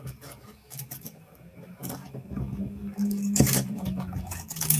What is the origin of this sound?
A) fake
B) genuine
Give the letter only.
A